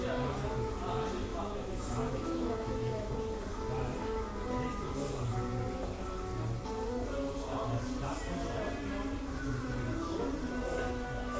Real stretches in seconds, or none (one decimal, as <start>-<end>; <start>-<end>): 0.0-1.3; 3.1-11.4